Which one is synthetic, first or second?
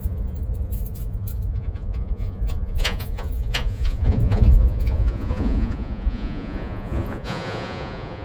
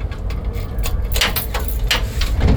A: first